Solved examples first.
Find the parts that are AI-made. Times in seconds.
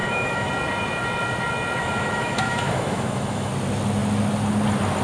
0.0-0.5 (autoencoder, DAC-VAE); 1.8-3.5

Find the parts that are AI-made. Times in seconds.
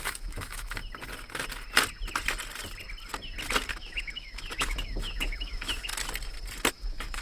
0.0-0.8 (autoencoder, DAC-VAE); 3.7-5.9; 6.7-7.2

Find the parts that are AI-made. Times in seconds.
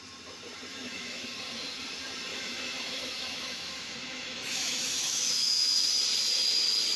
0.7-1.4 (autoencoder, DAC-VAE); 2.3-5.9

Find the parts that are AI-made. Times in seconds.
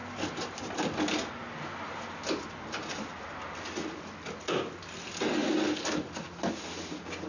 none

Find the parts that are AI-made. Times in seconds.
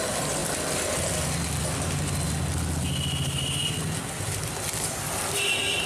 none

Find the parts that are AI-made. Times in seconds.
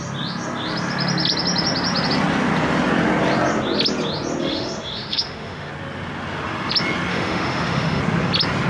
4.4-5.7 (autoencoder, DAC-VAE); 7.1-8.0